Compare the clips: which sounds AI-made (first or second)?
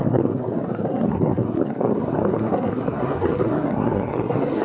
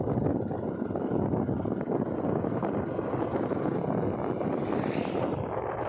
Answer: first